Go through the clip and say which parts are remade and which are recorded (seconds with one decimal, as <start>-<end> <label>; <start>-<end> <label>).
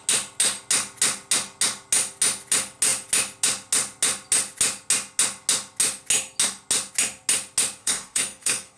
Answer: 0.0-7.8 recorded; 7.8-8.8 remade